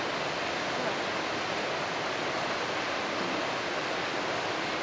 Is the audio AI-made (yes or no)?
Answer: no